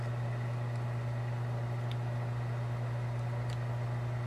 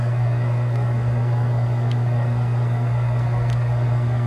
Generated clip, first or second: second